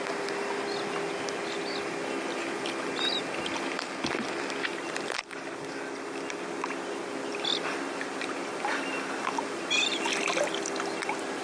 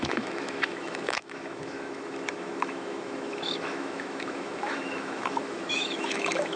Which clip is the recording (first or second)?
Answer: first